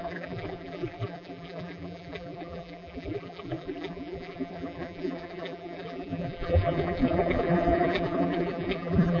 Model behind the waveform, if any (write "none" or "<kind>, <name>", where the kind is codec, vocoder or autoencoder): vocoder, BigVGAN v2